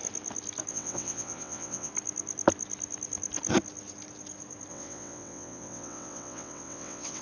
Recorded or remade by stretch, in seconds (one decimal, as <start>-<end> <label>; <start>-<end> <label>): 0.0-0.7 recorded; 0.7-1.9 remade; 1.9-4.7 recorded; 4.7-7.2 remade